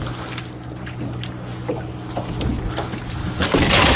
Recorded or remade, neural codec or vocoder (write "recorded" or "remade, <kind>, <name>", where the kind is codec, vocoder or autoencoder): recorded